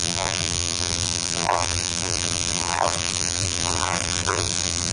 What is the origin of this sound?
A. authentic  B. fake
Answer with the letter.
B